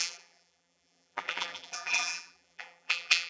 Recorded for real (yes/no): no